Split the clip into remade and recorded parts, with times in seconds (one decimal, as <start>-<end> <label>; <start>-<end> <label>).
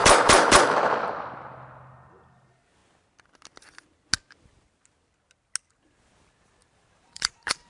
0.0-0.6 remade; 0.6-6.6 recorded; 6.6-7.7 remade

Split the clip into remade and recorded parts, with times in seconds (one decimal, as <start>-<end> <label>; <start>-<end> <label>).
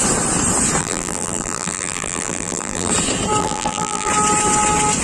0.0-0.8 recorded; 0.8-2.9 remade; 2.9-3.4 recorded; 3.4-4.1 remade; 4.1-5.0 recorded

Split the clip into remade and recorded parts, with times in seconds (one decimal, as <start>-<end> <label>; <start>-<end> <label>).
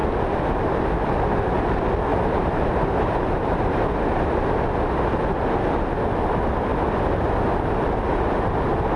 0.0-2.1 recorded; 2.1-4.6 remade; 4.6-9.0 recorded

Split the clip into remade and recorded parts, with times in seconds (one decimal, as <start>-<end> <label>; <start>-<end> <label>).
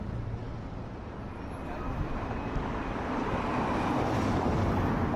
0.0-5.2 recorded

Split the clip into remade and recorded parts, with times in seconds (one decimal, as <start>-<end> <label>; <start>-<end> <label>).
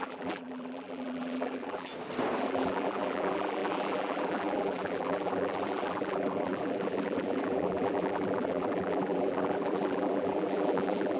0.0-1.9 remade; 1.9-2.4 recorded; 2.4-11.2 remade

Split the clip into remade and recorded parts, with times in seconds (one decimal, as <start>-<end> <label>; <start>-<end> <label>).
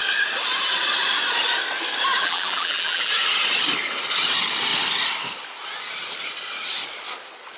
0.0-2.2 recorded; 2.2-3.1 remade; 3.1-7.6 recorded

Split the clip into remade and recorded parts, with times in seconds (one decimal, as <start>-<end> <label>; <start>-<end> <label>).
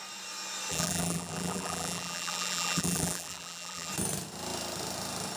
0.0-0.7 recorded; 0.7-3.9 remade; 3.9-5.4 recorded